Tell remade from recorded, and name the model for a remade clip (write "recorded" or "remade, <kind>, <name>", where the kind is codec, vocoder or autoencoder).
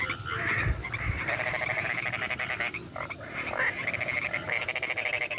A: remade, vocoder, BigVGAN v2